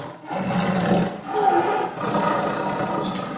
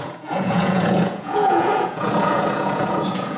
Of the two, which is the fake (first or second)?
second